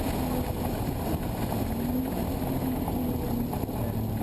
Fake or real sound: real